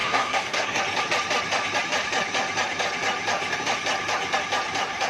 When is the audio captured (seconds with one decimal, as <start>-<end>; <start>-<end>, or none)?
0.8-5.1